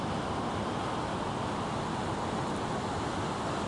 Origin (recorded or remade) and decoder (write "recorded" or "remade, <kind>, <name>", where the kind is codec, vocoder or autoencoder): recorded